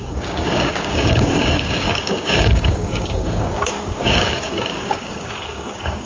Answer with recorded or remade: remade